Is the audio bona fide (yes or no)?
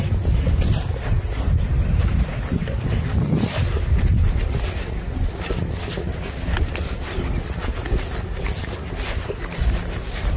yes